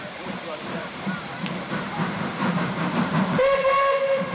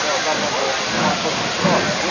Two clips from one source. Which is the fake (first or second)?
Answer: first